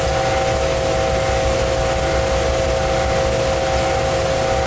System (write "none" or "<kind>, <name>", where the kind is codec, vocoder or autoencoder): none